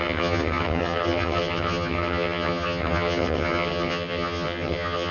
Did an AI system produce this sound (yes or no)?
yes